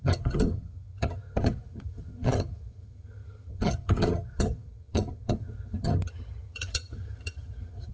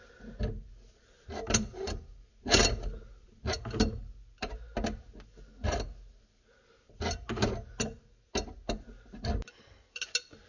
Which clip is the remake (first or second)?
first